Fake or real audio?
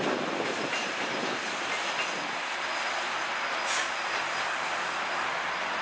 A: real